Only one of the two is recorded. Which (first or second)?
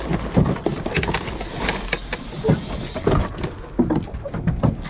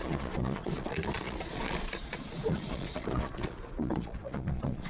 first